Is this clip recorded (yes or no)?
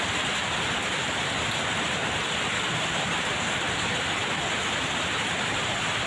yes